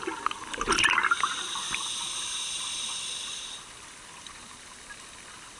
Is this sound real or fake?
real